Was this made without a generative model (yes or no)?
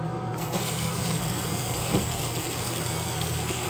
no